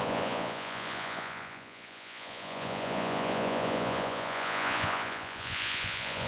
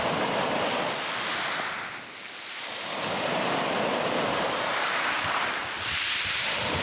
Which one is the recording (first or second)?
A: second